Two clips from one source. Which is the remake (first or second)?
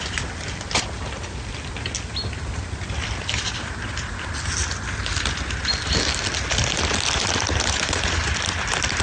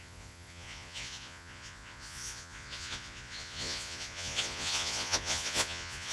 second